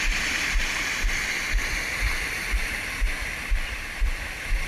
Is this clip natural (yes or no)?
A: no